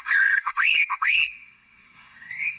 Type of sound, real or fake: fake